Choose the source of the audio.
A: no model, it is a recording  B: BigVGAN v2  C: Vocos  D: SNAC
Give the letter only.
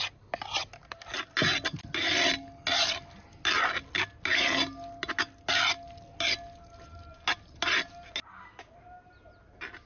A